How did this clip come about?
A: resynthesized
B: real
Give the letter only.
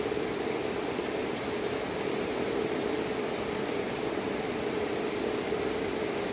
B